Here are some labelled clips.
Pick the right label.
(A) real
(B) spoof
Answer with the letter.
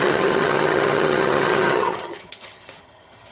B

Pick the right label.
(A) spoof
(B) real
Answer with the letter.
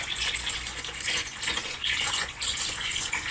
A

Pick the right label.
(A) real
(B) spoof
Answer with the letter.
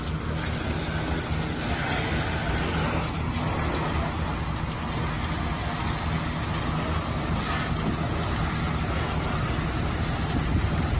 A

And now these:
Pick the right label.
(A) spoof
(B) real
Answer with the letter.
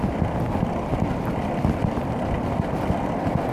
B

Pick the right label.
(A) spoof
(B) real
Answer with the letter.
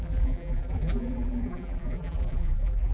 A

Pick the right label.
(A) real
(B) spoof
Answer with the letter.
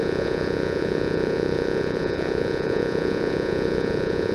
B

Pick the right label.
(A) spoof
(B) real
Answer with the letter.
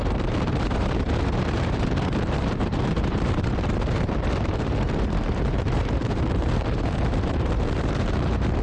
A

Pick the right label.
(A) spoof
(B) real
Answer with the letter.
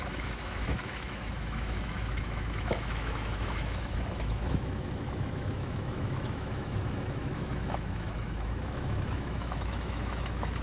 A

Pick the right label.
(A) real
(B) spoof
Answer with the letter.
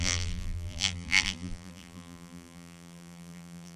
B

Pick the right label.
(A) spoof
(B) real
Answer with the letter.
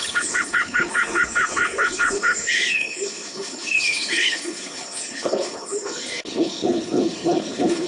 A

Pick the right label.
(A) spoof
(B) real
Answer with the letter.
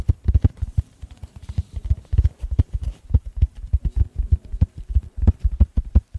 A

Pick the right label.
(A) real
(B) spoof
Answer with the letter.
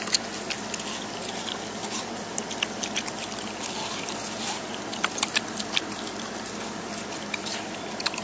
A